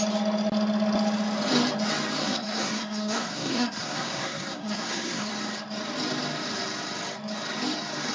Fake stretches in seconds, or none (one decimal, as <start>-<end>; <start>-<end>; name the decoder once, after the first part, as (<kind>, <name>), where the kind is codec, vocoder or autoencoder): 2.2-5.3 (codec, SNAC)